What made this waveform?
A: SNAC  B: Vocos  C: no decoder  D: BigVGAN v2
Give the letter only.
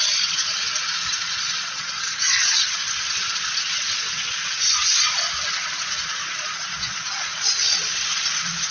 B